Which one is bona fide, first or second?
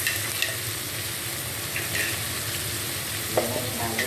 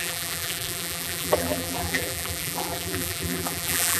first